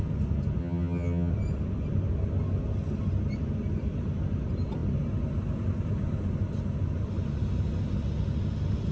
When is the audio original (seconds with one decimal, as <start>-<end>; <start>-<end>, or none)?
0.0-0.6; 1.3-8.9